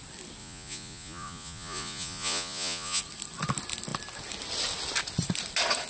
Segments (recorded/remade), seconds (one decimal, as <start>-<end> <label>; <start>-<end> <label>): 0.0-0.4 recorded; 0.4-3.0 remade; 3.0-5.9 recorded